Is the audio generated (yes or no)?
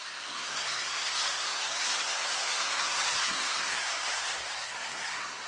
yes